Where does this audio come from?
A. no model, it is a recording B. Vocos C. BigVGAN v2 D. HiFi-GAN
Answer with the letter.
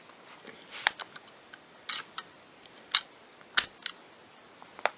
A